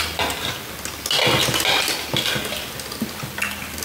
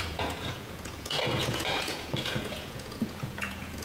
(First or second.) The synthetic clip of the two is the second